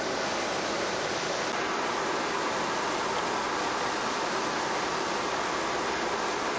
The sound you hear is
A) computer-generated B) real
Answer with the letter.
B